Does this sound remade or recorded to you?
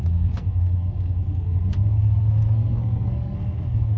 remade